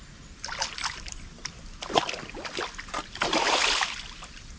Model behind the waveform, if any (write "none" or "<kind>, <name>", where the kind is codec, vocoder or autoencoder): none